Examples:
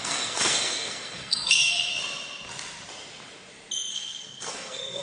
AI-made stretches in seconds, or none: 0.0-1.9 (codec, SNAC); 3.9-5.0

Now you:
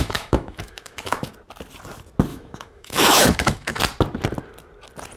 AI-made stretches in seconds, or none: 0.0-1.3 (autoencoder, DAC-VAE); 2.3-3.8

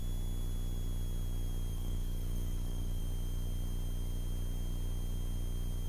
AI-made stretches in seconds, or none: 1.7-3.0 (codec, DAC)

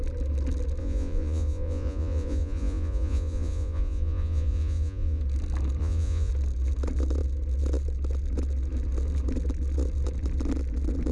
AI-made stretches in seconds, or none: 0.8-5.2 (vocoder, Vocos); 5.8-6.3

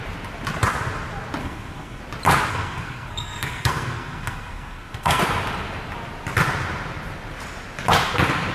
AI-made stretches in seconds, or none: 1.4-2.0 (codec, SNAC); 2.5-5.2

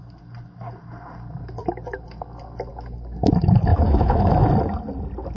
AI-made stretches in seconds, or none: 3.7-4.5 (autoencoder, DAC-VAE)

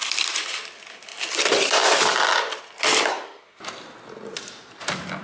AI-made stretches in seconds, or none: 3.1-3.6 (codec, SNAC)

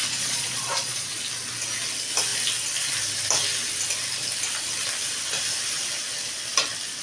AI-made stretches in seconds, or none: 0.0-1.2 (vocoder, Vocos)